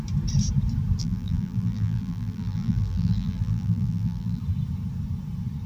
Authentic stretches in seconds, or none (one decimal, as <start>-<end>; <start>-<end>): 0.0-1.0; 4.4-5.7